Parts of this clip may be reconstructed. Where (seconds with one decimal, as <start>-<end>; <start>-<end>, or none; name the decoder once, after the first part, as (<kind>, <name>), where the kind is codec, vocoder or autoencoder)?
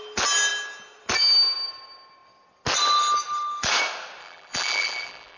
4.2-5.4 (vocoder, BigVGAN v2)